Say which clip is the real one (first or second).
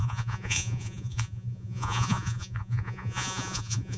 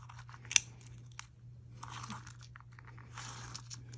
second